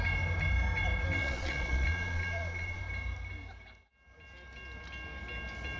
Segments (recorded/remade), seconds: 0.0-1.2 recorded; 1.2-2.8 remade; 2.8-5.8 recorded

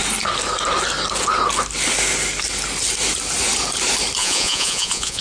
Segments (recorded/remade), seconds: 0.0-4.2 recorded; 4.2-5.2 remade

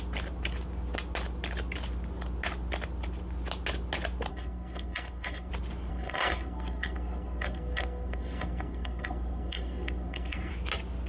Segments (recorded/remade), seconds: 0.0-4.3 recorded; 4.3-5.5 remade; 5.5-5.9 recorded; 5.9-10.5 remade; 10.5-11.1 recorded

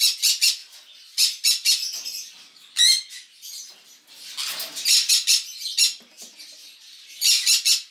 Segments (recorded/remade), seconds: 0.0-7.9 recorded

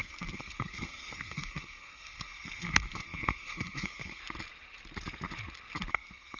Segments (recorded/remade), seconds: 0.0-4.2 remade; 4.2-5.9 recorded; 5.9-6.4 remade

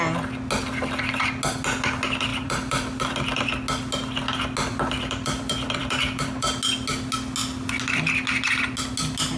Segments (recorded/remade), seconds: 0.0-2.3 recorded; 2.3-3.5 remade; 3.5-4.7 recorded; 4.7-6.5 remade; 6.5-9.4 recorded

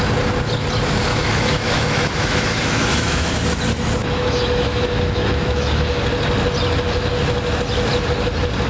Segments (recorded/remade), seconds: 0.0-1.1 recorded; 1.1-3.3 remade; 3.3-4.0 recorded; 4.0-6.0 remade; 6.0-8.7 recorded